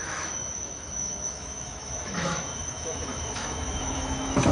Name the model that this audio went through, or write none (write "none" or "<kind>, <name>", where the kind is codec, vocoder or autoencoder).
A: autoencoder, DAC-VAE